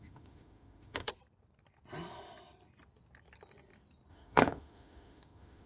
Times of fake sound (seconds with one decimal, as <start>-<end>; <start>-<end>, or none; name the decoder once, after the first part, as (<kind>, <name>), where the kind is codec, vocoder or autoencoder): 0.0-1.1 (autoencoder, DAC-VAE); 4.1-5.7